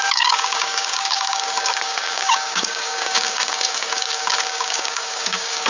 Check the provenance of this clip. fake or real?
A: fake